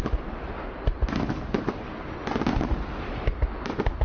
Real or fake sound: real